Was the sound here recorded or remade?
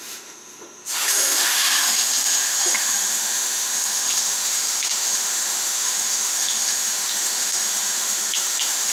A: remade